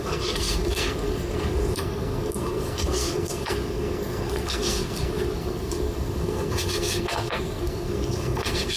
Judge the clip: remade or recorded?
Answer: remade